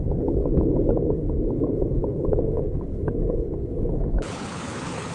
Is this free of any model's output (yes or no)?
no